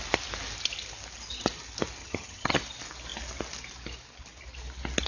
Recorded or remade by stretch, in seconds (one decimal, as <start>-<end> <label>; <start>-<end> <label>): 0.0-2.0 recorded; 2.0-2.6 remade; 2.6-5.1 recorded